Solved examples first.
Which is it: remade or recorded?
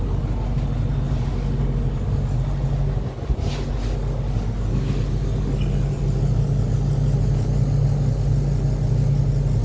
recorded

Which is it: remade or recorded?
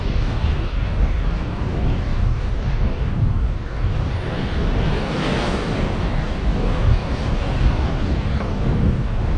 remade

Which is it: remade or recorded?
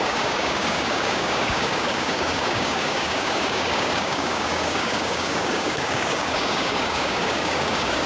remade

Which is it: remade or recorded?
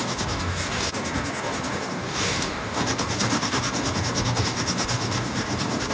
remade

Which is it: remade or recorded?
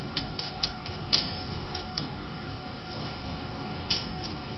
remade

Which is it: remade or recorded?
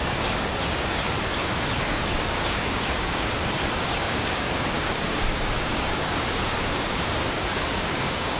remade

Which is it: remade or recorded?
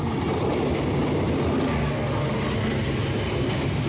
recorded